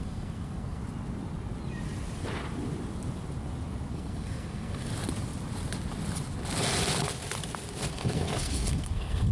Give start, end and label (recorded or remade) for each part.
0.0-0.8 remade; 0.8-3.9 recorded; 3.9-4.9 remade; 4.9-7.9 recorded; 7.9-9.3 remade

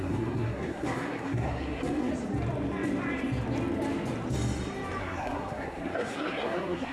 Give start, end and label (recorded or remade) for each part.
0.0-2.1 remade; 2.1-5.0 recorded; 5.0-6.9 remade

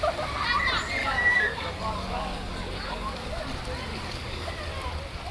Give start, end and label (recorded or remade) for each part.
0.0-1.0 recorded; 1.0-3.4 remade; 3.4-3.9 recorded; 3.9-4.5 remade; 4.5-5.3 recorded